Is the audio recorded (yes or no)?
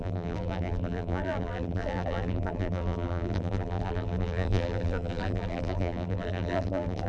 no